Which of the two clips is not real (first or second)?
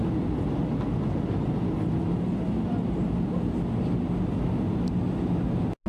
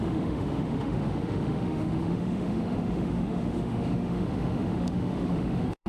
second